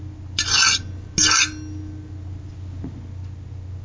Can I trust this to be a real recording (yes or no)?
yes